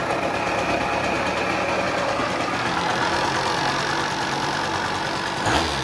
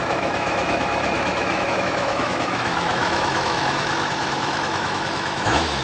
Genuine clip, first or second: first